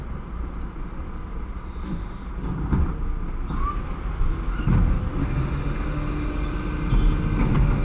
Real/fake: real